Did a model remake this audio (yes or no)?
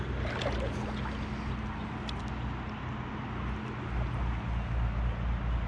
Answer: no